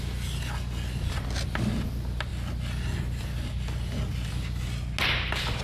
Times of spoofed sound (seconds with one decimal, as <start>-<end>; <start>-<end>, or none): none